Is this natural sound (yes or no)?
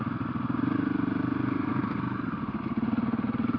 yes